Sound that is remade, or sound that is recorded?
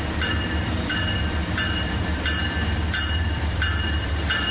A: remade